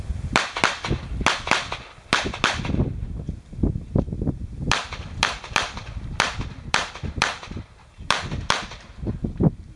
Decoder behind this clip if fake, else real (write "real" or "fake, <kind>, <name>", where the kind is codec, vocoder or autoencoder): real